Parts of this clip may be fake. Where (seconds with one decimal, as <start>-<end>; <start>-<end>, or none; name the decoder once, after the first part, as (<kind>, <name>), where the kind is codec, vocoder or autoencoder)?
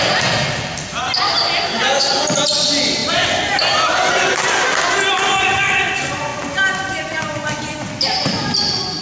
none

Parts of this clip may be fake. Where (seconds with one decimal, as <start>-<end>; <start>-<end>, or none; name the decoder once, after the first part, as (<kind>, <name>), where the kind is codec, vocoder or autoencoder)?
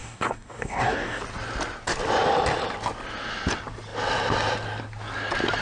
0.0-1.2 (codec, DAC)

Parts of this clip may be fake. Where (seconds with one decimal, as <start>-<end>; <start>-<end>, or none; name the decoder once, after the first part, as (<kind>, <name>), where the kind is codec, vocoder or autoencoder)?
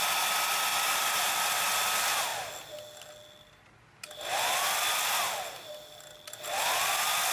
0.7-1.3 (vocoder, BigVGAN v2)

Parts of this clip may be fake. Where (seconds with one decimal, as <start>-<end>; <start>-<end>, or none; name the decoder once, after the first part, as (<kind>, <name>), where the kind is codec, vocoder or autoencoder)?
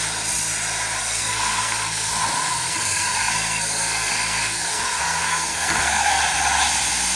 1.0-2.1 (codec, SNAC); 2.5-6.2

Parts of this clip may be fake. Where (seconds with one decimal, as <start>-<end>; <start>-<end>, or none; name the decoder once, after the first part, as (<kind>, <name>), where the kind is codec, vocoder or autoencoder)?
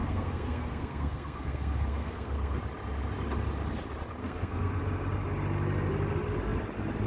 0.0-2.6 (codec, SNAC); 4.2-4.8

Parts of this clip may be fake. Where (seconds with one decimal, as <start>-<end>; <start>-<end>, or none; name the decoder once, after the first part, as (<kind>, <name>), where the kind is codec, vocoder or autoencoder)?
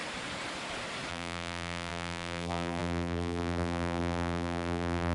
1.1-5.1 (vocoder, BigVGAN v2)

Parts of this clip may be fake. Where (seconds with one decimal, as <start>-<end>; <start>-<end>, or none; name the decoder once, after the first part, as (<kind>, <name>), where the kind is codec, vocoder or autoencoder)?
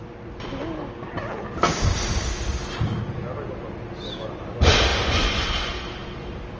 4.9-5.7 (vocoder, Vocos)